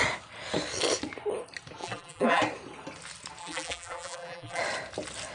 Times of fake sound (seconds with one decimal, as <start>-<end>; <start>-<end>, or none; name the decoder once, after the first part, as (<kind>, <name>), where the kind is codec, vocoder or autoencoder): 1.8-2.4 (vocoder, BigVGAN v2); 3.4-4.6

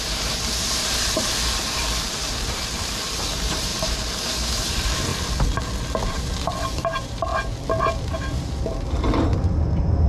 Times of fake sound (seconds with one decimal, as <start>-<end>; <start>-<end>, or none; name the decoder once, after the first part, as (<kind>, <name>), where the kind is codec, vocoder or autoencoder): 0.0-5.1 (vocoder, BigVGAN v2); 6.1-7.3; 7.9-10.1